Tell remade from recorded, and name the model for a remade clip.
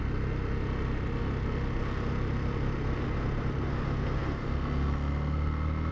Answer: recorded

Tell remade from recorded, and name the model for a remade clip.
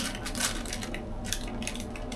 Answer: recorded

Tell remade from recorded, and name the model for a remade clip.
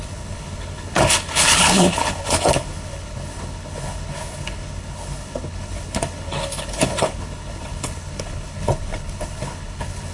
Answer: remade, codec, HILCodec